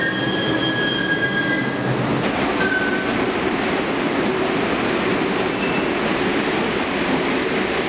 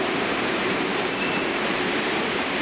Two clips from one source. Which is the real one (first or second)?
first